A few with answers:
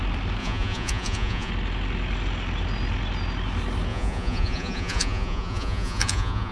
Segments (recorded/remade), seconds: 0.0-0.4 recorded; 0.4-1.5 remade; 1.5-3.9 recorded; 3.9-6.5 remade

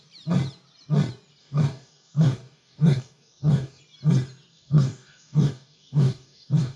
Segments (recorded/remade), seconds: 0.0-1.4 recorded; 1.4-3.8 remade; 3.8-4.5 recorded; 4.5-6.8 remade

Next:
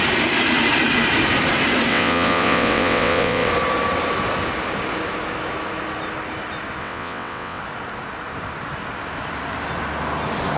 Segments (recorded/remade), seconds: 0.0-1.9 recorded; 1.9-3.5 remade; 3.5-6.8 recorded; 6.8-7.6 remade; 7.6-10.6 recorded